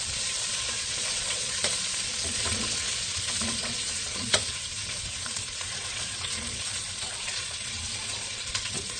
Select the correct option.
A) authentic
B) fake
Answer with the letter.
B